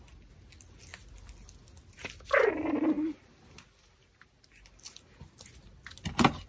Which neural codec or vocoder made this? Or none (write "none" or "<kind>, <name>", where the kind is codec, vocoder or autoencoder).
none